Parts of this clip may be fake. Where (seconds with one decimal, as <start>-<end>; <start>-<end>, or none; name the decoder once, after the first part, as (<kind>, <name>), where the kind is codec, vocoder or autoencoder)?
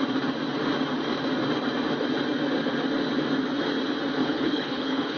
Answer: 4.2-5.2 (codec, HILCodec)